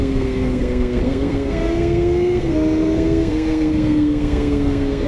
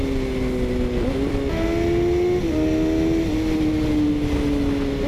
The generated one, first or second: first